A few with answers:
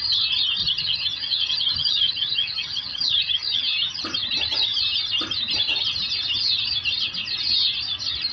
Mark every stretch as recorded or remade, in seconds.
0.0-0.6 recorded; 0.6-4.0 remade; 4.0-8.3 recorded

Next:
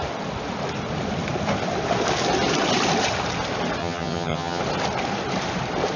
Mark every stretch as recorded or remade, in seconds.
0.0-3.8 recorded; 3.8-4.6 remade; 4.6-6.0 recorded

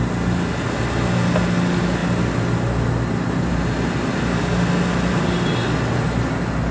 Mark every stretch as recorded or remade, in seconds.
0.0-6.7 recorded